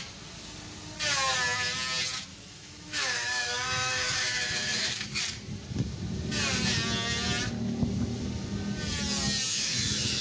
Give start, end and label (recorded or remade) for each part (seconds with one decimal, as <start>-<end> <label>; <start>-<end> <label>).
0.0-2.3 recorded; 2.3-5.2 remade; 5.2-9.5 recorded; 9.5-10.2 remade